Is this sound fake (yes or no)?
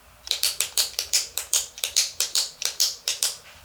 yes